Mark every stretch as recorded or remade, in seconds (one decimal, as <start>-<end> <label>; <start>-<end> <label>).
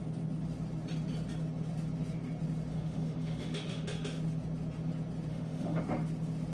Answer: 0.0-2.7 recorded; 2.7-4.2 remade; 4.2-5.3 recorded; 5.3-5.8 remade; 5.8-6.5 recorded